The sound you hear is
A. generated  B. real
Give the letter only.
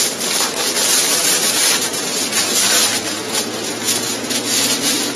B